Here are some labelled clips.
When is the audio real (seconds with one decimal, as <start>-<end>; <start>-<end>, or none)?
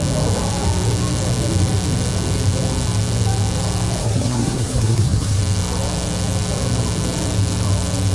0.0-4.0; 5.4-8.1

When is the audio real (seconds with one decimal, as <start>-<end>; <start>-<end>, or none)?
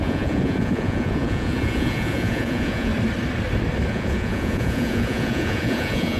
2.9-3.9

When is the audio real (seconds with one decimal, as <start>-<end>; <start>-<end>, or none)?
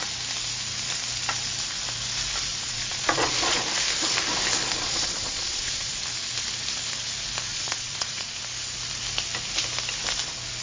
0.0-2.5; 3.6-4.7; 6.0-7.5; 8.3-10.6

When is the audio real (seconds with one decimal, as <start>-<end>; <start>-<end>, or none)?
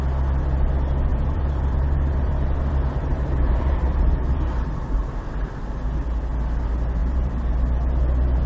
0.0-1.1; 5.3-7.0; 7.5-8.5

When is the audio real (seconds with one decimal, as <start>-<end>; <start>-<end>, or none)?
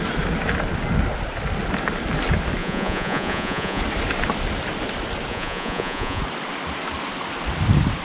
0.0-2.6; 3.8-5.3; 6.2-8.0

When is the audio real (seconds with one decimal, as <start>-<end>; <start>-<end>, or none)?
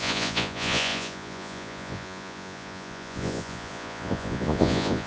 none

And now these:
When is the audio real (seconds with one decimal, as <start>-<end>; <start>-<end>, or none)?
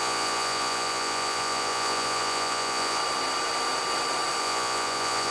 3.0-4.4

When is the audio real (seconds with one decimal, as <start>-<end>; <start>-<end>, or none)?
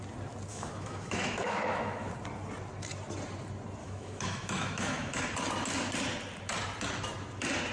0.0-0.5; 2.1-3.8; 5.2-7.7